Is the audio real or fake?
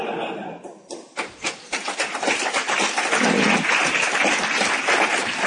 real